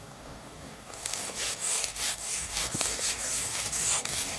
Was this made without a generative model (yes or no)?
no